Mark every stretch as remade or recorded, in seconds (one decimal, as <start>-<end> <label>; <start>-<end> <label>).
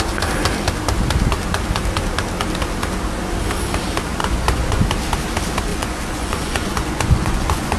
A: 0.0-4.2 recorded; 4.2-4.8 remade; 4.8-5.7 recorded; 5.7-7.8 remade